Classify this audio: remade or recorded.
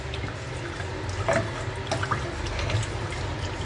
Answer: recorded